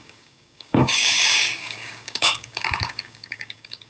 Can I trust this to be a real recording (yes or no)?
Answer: no